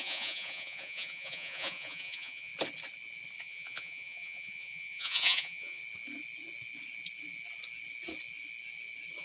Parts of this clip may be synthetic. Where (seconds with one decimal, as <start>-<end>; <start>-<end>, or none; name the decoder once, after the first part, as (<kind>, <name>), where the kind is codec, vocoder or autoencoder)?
0.0-2.5 (vocoder, Vocos); 3.4-5.8